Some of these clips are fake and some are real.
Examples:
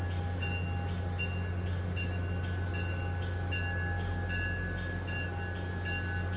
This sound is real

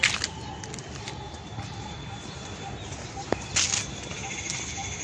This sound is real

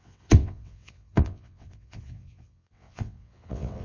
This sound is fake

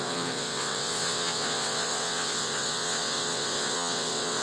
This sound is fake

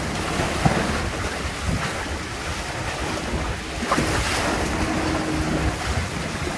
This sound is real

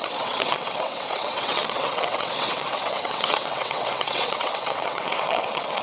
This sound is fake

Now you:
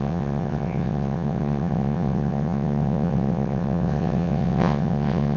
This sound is fake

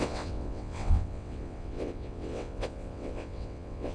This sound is fake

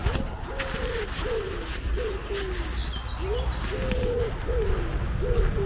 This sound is real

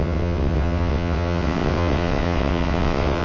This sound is fake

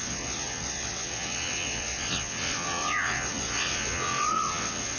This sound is fake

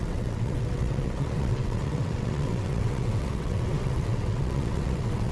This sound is fake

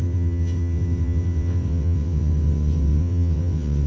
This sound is fake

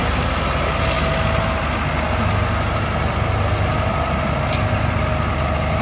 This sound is real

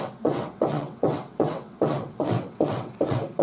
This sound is fake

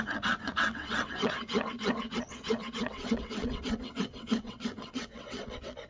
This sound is fake